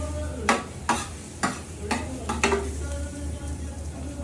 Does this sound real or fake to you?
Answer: real